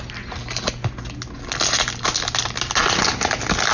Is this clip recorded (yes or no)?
yes